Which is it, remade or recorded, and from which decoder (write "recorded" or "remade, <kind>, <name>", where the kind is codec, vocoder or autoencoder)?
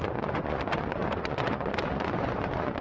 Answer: remade, vocoder, Vocos